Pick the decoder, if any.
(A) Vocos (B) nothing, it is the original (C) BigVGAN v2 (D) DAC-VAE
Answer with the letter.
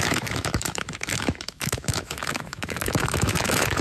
D